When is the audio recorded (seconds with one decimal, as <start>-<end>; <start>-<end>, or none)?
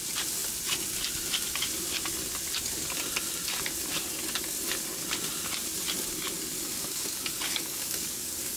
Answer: 0.0-6.7